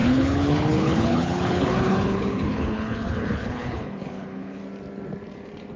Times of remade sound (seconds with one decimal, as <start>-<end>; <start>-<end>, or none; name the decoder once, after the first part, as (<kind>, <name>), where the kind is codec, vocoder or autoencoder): 0.0-4.6 (codec, HILCodec)